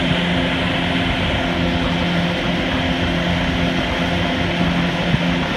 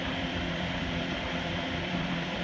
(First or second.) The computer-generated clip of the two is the second